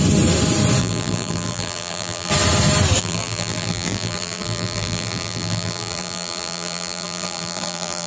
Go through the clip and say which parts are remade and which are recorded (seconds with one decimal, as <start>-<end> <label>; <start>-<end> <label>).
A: 0.0-0.8 recorded; 0.8-2.3 remade; 2.3-3.0 recorded; 3.0-8.1 remade